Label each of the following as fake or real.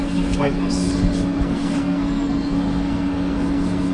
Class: fake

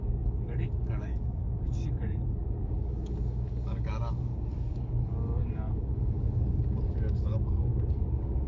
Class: fake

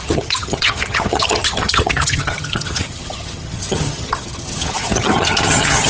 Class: fake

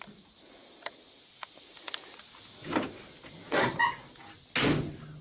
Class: real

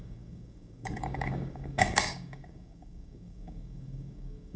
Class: fake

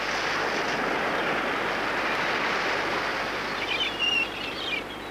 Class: real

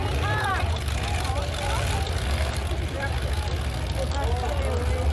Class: real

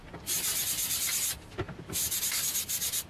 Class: real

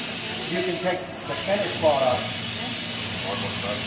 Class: real